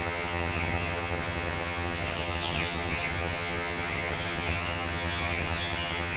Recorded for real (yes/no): no